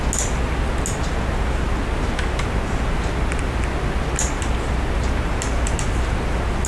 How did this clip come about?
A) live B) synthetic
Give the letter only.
A